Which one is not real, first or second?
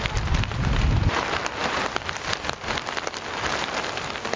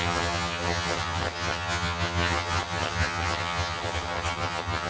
second